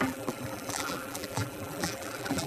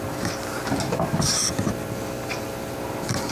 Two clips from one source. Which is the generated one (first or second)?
first